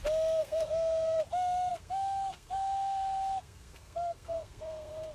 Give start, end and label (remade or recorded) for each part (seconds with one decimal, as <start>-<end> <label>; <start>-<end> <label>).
0.0-0.4 recorded; 0.4-1.2 remade; 1.2-1.7 recorded; 1.7-5.1 remade